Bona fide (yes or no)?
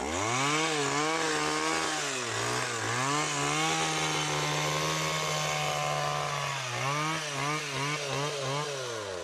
yes